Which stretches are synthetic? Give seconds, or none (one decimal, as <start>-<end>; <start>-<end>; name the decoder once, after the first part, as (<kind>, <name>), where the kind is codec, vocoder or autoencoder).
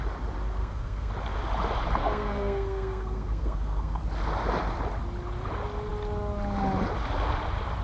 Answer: 0.6-1.1 (codec, SNAC); 2.0-4.0